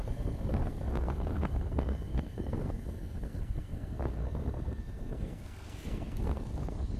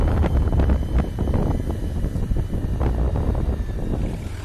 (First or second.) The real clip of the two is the second